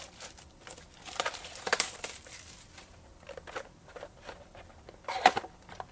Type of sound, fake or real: fake